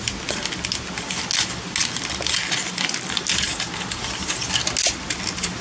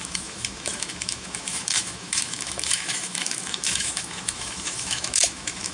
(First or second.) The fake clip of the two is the second